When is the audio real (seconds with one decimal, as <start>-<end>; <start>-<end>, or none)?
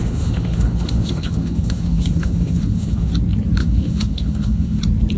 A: 3.1-3.6; 4.8-5.2